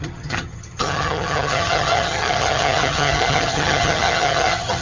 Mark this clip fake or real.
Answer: fake